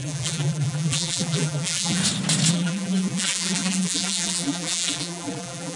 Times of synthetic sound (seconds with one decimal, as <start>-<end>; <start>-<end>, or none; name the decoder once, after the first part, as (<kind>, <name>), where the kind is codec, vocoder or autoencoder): 0.0-2.0 (vocoder, BigVGAN v2); 2.5-5.8